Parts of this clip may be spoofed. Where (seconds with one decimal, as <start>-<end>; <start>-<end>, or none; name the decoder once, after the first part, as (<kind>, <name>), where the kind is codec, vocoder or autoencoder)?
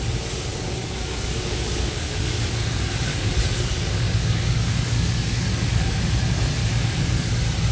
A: 0.5-2.3 (codec, DAC); 3.1-6.0; 6.6-7.3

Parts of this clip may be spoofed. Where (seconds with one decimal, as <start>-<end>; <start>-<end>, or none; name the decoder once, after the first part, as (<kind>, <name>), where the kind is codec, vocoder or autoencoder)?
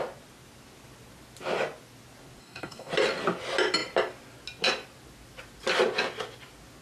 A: 2.4-2.9 (codec, DAC)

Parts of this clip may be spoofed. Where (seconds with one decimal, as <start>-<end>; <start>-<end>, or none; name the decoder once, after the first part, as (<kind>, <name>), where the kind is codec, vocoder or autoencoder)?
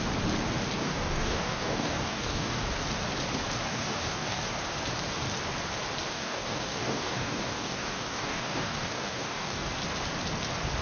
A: 0.8-2.6 (codec, DAC); 3.7-4.4; 6.1-9.7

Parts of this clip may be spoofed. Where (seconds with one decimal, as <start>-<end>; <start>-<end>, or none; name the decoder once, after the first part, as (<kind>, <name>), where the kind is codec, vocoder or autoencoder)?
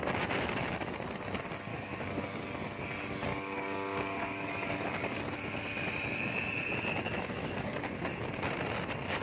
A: 1.7-2.4 (codec, DAC); 3.3-5.2; 7.4-8.0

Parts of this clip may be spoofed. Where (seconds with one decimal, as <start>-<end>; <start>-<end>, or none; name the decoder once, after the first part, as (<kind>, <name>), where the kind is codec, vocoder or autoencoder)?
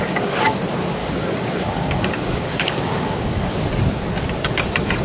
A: 0.0-0.6 (codec, DAC); 1.0-3.5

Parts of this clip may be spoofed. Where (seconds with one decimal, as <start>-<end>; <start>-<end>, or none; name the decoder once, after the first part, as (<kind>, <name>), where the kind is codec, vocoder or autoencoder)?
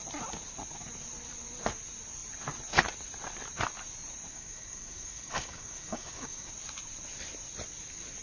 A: 4.3-6.5 (codec, DAC)